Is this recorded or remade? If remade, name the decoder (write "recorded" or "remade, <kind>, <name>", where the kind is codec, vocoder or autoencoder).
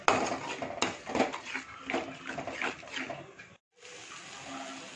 recorded